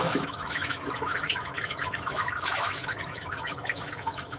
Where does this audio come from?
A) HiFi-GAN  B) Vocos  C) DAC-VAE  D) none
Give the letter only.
C